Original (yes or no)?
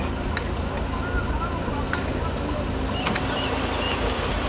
yes